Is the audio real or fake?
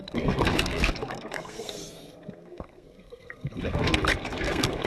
fake